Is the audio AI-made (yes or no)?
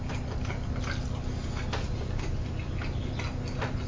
no